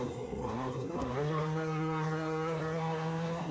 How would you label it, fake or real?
fake